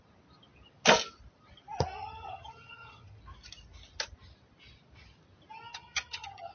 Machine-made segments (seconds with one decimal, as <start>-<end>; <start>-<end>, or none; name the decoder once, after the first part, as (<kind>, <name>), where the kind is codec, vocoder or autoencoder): 2.0-3.2 (vocoder, HiFi-GAN); 5.7-6.5